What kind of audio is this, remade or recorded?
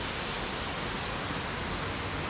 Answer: recorded